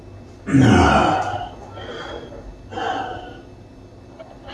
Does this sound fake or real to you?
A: real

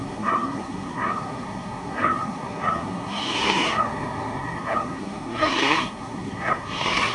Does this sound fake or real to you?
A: fake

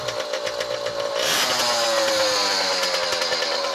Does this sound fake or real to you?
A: real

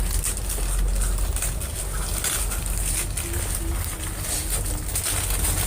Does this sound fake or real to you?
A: real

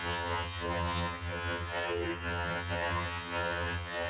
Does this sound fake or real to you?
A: fake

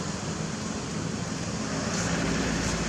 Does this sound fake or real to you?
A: real